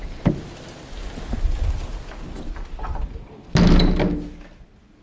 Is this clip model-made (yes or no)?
no